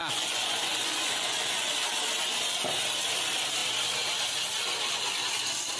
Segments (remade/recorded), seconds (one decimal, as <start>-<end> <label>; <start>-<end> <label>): 0.0-1.7 remade; 1.7-5.8 recorded